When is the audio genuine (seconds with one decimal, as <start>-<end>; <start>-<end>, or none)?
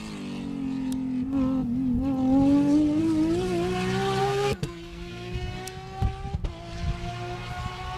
0.0-4.2; 6.0-8.0